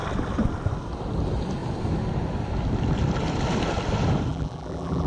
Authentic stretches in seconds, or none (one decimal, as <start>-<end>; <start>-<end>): 0.0-4.3